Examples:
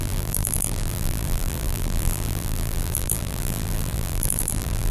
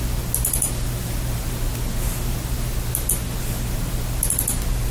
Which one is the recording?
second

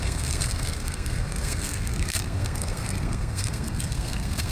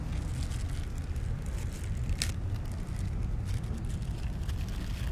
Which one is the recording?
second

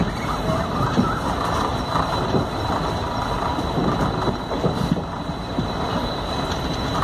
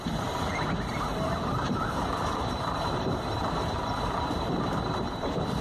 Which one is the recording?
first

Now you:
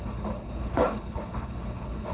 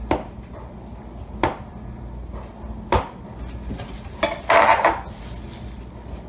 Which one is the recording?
second